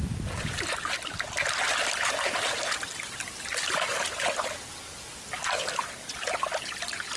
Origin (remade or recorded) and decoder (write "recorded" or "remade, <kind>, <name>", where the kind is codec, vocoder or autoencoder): recorded